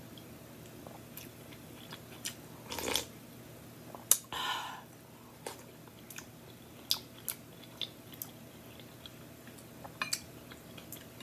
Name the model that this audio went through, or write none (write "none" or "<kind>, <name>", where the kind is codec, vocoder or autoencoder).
none